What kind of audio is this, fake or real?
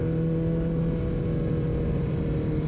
real